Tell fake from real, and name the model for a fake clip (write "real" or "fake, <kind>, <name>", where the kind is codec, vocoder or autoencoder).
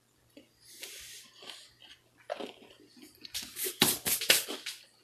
real